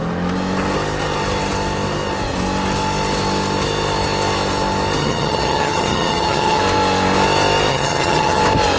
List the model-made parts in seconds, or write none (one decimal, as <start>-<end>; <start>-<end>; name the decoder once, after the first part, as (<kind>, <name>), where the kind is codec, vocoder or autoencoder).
5.0-6.6 (vocoder, HiFi-GAN); 7.7-8.4